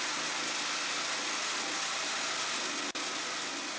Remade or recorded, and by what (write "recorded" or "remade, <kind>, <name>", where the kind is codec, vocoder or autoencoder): recorded